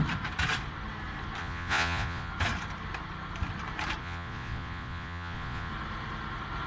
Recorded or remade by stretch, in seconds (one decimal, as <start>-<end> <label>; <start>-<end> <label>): 0.0-1.4 recorded; 1.4-2.3 remade; 2.3-4.0 recorded; 4.0-5.7 remade; 5.7-6.7 recorded